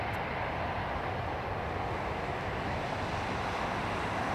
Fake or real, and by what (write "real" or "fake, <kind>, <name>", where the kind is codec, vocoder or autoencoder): real